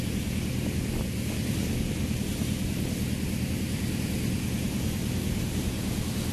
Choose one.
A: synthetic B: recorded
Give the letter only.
B